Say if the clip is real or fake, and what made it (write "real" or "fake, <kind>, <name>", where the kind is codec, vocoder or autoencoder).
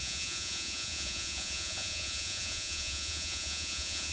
fake, vocoder, Vocos